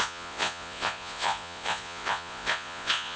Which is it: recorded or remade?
remade